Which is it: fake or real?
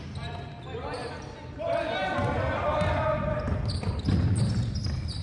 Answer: real